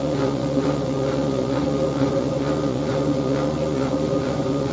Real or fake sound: fake